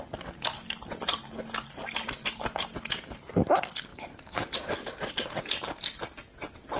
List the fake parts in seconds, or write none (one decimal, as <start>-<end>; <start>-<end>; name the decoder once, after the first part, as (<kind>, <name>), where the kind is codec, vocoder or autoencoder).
3.9-4.5 (vocoder, BigVGAN v2)